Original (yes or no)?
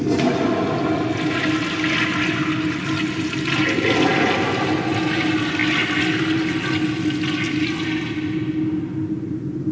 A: yes